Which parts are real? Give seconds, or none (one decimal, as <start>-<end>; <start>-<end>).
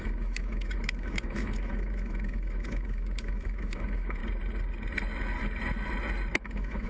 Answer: 4.2-6.4